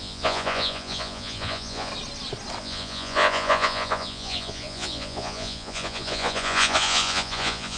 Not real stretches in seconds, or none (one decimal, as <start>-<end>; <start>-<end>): 0.0-1.9; 2.6-7.8